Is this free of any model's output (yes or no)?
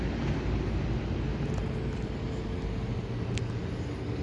yes